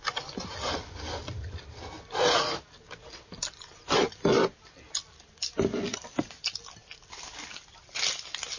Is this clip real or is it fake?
real